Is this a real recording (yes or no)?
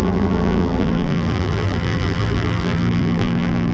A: no